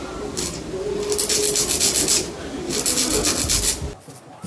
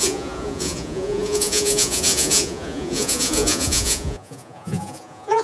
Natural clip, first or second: first